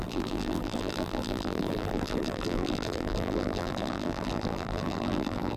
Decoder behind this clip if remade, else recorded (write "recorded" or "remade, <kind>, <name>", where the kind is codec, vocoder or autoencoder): remade, vocoder, BigVGAN v2